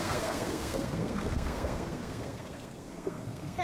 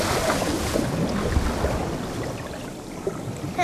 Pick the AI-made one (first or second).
first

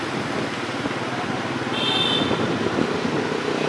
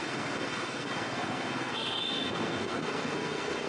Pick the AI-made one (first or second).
second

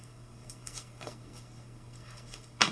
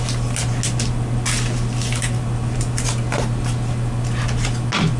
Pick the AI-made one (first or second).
first